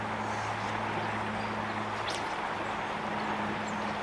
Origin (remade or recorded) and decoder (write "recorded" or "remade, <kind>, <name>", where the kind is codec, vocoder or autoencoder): recorded